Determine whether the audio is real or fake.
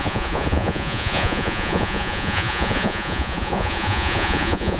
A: fake